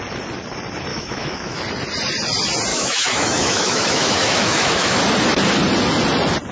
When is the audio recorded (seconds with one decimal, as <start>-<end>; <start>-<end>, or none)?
0.0-0.9; 1.6-2.7; 5.0-6.5

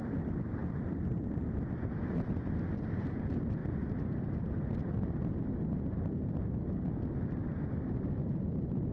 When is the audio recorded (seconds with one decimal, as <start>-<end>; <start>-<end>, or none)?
3.6-6.4

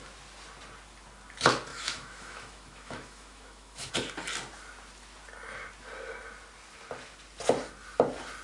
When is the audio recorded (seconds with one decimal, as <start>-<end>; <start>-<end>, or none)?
0.0-1.7; 3.9-8.4

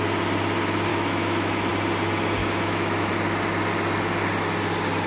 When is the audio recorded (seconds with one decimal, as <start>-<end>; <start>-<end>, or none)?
0.0-0.9; 1.7-2.4; 3.1-5.1